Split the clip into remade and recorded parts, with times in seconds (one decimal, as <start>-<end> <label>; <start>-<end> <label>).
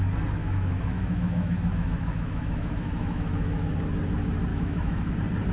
0.0-0.4 recorded; 0.4-3.7 remade; 3.7-4.5 recorded; 4.5-5.1 remade; 5.1-5.5 recorded